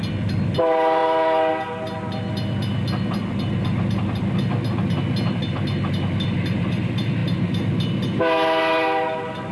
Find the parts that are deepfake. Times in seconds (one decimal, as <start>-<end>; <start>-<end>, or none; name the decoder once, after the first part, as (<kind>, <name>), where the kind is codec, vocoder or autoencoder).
none